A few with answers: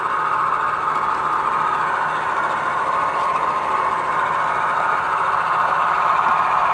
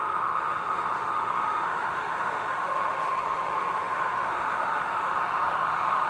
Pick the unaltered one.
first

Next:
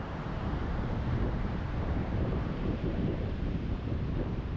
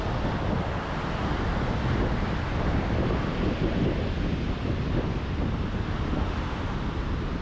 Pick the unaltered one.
second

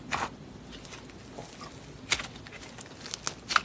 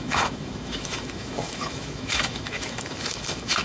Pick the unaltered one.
first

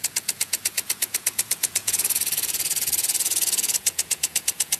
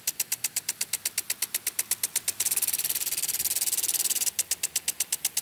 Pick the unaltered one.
second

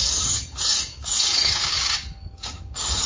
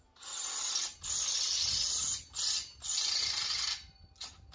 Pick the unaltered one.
second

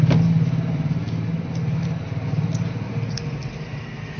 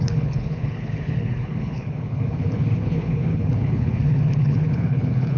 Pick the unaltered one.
first